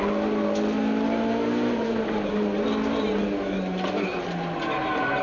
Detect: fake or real real